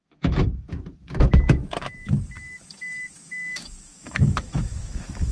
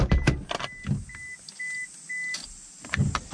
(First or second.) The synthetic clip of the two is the first